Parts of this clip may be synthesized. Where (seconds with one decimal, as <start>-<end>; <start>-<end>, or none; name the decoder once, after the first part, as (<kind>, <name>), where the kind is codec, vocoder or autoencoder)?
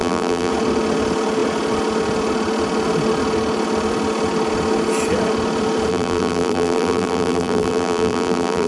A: 0.0-0.5 (vocoder, BigVGAN v2); 5.9-8.7